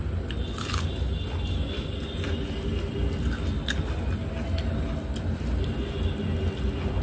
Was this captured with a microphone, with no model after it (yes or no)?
yes